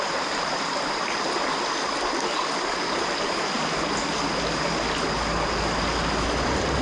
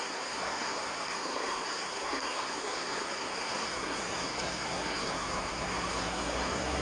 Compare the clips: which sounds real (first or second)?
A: first